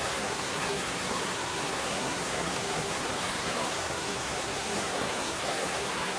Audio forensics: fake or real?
fake